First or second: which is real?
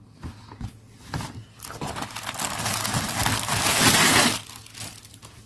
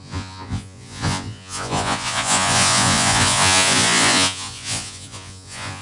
first